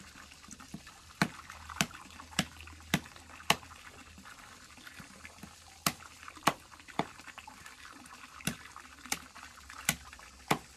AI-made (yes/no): no